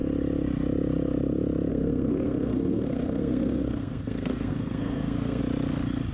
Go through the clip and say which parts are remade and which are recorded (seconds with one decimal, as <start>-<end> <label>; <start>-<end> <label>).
0.0-1.7 recorded; 1.7-5.4 remade; 5.4-6.1 recorded